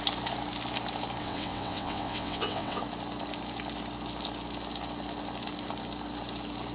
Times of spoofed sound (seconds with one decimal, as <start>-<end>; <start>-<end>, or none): 1.2-2.8